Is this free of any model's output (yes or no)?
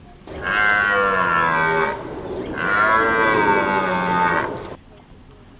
yes